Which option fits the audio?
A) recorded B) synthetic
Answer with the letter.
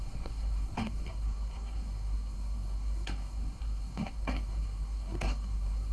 B